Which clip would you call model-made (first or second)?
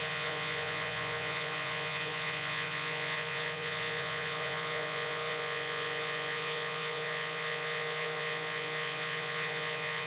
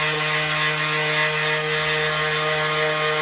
first